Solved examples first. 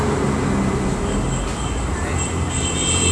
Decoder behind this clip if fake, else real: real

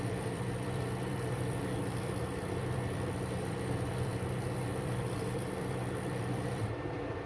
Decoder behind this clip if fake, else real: fake, vocoder, BigVGAN v2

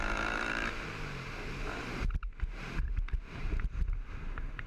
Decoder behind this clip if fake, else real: fake, vocoder, BigVGAN v2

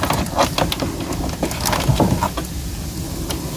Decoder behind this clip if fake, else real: real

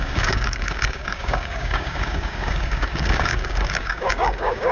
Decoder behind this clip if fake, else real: fake, codec, DAC